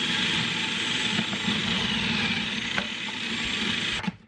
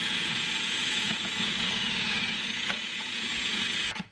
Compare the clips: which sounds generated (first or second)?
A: second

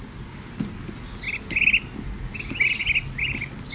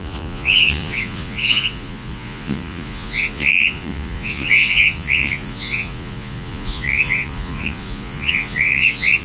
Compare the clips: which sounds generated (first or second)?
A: second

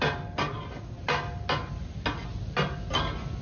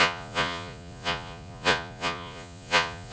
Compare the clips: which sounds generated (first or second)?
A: second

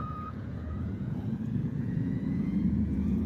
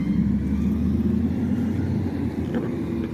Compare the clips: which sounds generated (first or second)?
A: first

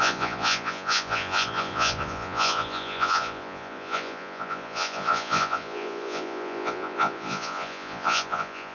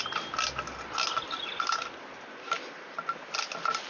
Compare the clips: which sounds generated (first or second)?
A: first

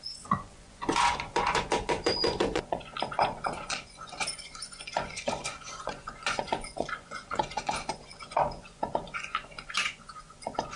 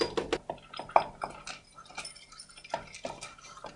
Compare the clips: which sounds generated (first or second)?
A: first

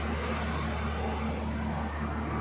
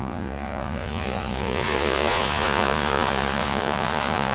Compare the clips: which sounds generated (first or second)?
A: second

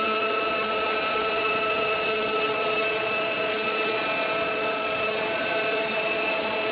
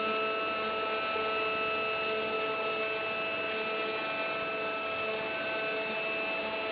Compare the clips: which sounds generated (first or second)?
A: first